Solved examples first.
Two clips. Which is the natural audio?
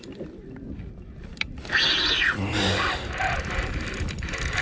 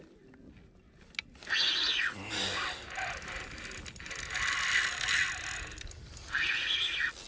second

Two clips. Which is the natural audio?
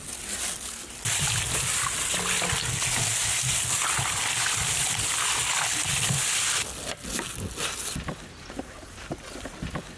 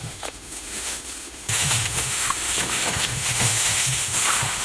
first